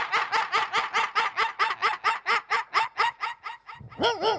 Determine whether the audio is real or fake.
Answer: real